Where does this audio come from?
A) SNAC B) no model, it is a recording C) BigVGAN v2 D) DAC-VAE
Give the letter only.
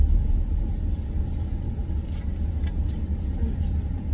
B